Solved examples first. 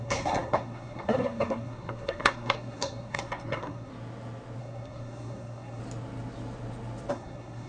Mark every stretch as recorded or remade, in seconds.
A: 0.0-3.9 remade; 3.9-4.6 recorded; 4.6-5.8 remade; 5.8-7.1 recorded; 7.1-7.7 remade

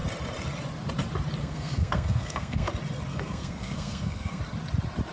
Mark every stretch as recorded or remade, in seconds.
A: 0.0-1.4 recorded; 1.4-2.7 remade; 2.7-3.1 recorded; 3.1-4.4 remade; 4.4-5.1 recorded

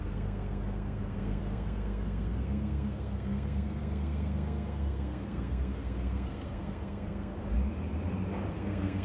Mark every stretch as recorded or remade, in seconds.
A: 0.0-7.3 remade; 7.3-8.5 recorded; 8.5-9.0 remade